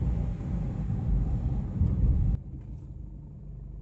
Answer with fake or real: real